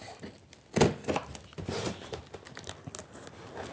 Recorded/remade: recorded